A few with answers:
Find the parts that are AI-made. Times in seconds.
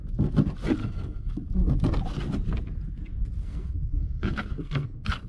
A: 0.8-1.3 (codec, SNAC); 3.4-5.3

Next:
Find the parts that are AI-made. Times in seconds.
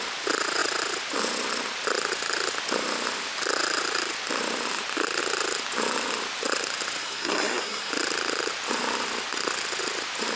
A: 7.0-7.9 (codec, SNAC)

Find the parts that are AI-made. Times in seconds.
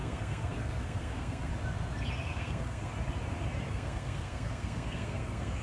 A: 0.0-1.5 (codec, SNAC); 2.2-2.9; 3.7-5.6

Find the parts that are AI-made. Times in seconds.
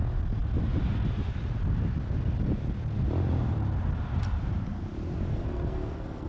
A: 5.3-6.3 (codec, SNAC)